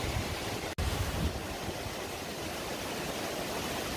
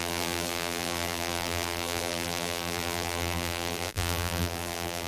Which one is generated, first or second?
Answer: second